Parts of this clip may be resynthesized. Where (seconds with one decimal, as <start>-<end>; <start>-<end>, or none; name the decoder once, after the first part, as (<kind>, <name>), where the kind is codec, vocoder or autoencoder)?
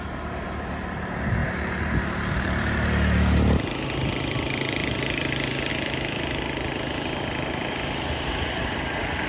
none